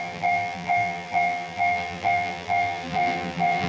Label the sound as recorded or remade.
remade